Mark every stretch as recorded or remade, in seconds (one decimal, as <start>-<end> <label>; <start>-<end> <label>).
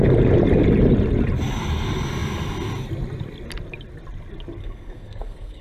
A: 0.0-4.6 recorded; 4.6-5.6 remade